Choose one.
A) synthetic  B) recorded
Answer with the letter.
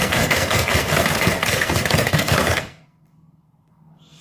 A